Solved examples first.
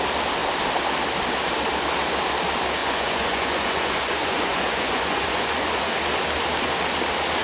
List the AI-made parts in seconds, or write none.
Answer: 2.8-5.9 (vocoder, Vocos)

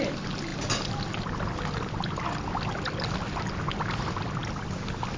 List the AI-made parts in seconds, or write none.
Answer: none

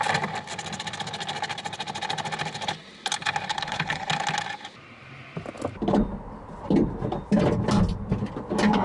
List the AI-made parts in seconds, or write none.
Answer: 3.5-4.1 (codec, HILCodec)

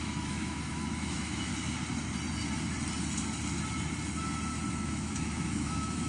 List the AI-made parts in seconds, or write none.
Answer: 0.0-1.5 (autoencoder, DAC-VAE); 4.7-6.1

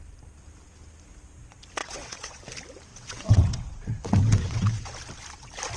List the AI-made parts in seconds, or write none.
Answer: 1.8-2.4 (vocoder, WaveNeXt); 2.9-4.9